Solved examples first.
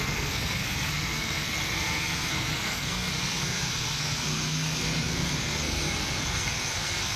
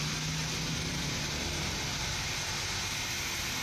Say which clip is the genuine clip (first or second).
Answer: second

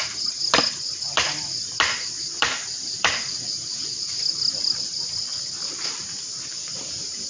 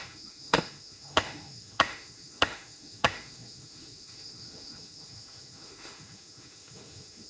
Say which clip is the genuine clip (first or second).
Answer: first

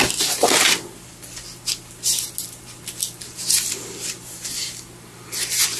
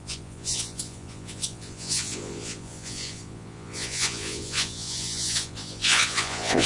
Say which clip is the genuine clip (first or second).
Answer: first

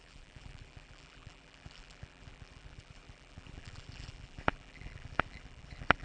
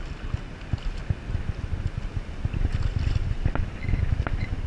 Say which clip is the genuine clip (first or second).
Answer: second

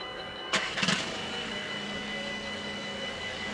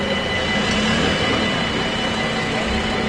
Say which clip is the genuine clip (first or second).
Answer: second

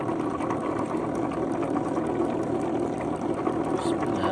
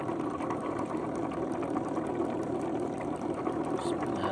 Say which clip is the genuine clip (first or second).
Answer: first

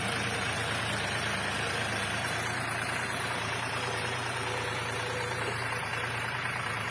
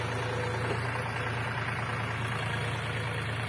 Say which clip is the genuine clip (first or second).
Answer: second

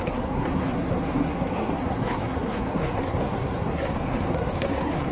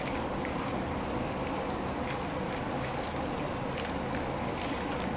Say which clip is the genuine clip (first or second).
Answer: second